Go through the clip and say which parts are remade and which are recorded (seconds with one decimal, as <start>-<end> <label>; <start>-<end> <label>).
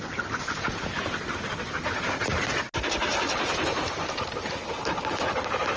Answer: 0.0-5.8 recorded